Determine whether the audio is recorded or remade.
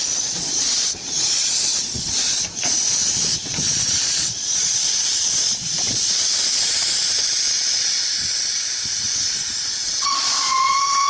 remade